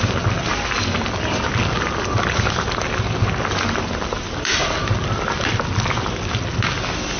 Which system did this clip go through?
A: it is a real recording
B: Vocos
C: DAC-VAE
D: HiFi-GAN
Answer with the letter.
A